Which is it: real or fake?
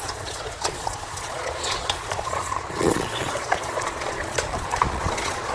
fake